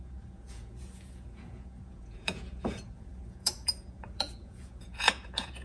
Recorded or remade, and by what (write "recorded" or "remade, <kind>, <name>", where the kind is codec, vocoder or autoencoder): remade, vocoder, Vocos